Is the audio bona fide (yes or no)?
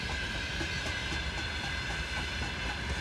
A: yes